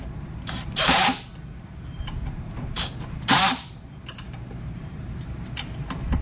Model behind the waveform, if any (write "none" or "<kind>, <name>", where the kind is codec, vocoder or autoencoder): vocoder, BigVGAN v2